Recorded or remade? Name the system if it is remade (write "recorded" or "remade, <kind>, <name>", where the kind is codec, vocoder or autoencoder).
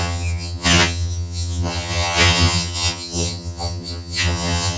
remade, vocoder, HiFi-GAN